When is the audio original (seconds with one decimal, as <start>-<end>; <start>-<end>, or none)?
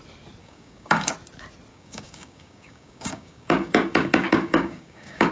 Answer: 0.0-0.4; 1.1-1.7